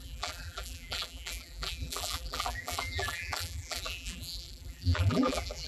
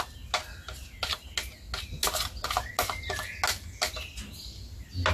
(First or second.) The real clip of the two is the second